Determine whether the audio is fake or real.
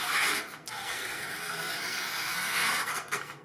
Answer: fake